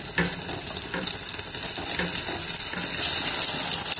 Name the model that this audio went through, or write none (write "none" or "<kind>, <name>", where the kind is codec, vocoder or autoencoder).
none